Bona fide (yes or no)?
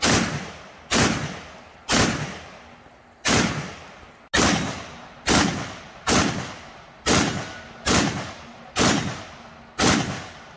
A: yes